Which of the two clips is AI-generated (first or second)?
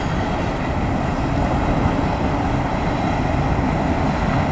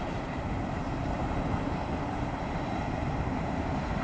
second